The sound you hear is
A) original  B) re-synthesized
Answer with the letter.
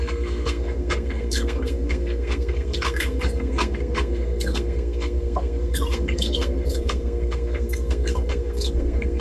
B